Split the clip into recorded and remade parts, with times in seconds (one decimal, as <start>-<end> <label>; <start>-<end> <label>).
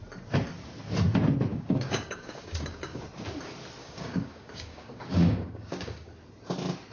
0.0-1.5 recorded; 1.5-3.0 remade; 3.0-3.8 recorded; 3.8-6.1 remade; 6.1-6.9 recorded